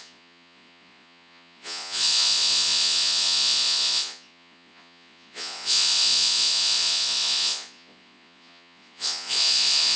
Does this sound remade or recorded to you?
remade